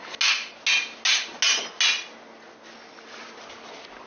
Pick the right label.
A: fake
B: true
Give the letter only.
B